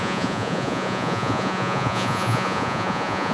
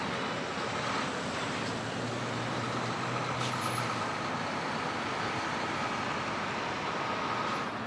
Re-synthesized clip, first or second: first